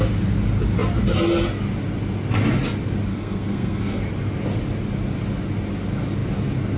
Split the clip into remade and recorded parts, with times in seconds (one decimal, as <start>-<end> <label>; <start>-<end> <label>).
0.0-3.1 recorded; 3.1-4.0 remade; 4.0-6.8 recorded